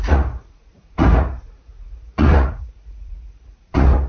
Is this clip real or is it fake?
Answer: fake